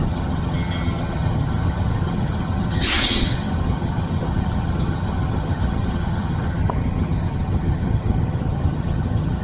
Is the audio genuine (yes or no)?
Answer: no